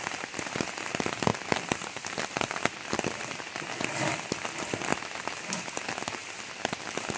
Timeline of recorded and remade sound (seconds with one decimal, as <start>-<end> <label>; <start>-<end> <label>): 0.0-4.9 remade; 4.9-6.4 recorded; 6.4-7.2 remade